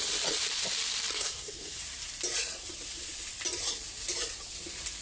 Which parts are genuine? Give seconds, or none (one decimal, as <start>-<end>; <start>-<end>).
0.0-1.1; 1.8-5.0